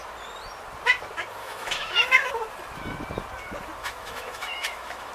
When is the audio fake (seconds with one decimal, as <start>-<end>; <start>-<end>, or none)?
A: 1.4-2.3; 3.8-5.1